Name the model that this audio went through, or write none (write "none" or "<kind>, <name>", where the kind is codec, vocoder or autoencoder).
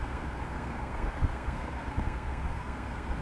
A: codec, SNAC